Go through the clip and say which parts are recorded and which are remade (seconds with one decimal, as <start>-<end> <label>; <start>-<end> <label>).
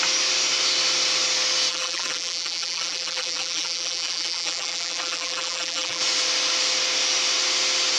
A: 0.0-1.7 recorded; 1.7-6.0 remade; 6.0-8.0 recorded